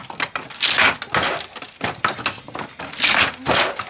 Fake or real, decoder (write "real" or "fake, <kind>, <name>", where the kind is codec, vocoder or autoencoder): real